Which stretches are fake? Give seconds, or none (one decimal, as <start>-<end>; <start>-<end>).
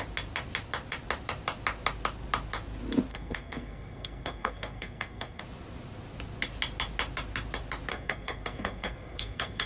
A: 3.1-5.4; 7.9-9.7